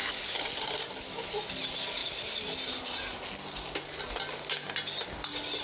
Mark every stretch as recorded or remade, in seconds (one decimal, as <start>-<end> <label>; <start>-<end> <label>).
0.0-5.6 recorded